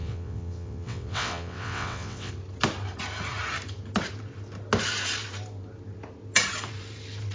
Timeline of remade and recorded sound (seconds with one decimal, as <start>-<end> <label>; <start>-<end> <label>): 0.0-2.3 remade; 2.3-7.3 recorded